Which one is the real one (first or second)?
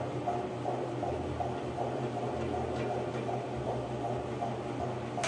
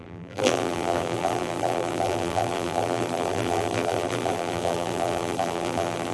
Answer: first